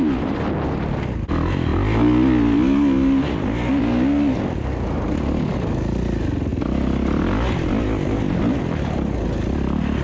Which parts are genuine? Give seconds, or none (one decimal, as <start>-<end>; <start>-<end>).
0.0-10.0

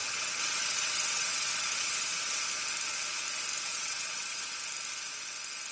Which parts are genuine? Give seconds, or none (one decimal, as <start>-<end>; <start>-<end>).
2.3-3.7; 4.6-5.7